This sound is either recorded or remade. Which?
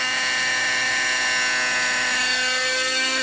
recorded